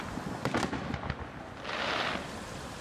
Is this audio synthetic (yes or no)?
no